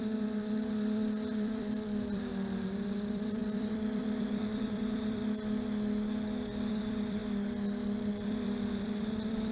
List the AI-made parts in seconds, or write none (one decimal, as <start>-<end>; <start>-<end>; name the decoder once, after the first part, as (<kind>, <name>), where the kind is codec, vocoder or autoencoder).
0.0-2.3 (vocoder, BigVGAN v2); 2.9-5.2; 6.7-7.2; 8.1-9.5